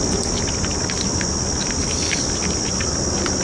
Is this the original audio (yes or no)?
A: yes